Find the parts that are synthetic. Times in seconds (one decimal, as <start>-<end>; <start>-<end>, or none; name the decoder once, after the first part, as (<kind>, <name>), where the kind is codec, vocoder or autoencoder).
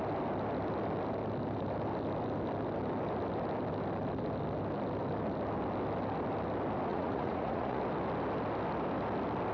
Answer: 6.9-7.8 (vocoder, Vocos)